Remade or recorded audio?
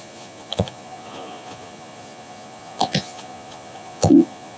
remade